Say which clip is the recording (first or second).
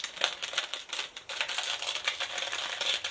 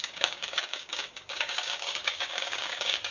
first